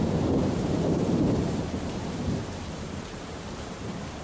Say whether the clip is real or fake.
fake